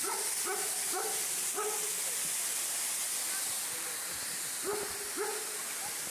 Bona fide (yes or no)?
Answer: yes